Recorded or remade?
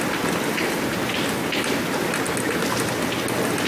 recorded